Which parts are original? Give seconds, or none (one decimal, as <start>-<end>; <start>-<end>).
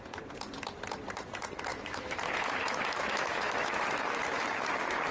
0.0-1.7